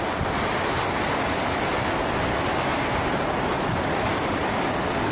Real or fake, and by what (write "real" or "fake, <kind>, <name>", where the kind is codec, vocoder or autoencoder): real